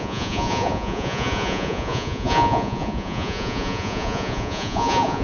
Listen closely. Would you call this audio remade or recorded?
remade